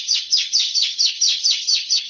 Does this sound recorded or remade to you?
remade